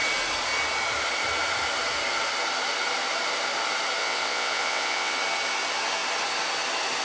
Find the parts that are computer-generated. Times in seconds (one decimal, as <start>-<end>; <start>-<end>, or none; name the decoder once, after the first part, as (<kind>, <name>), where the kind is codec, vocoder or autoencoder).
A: 4.0-5.2 (vocoder, WaveNeXt)